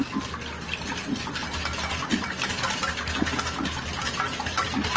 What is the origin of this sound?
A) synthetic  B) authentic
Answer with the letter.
B